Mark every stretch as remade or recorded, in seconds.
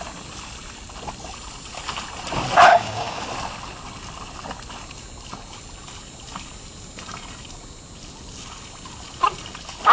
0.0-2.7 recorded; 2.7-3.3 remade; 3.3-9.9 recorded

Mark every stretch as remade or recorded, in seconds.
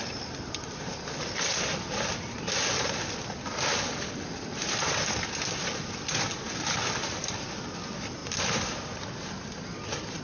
0.0-10.2 recorded